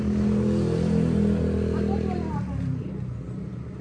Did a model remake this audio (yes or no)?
no